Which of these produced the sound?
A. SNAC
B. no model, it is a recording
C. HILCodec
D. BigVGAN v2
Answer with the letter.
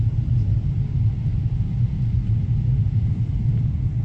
B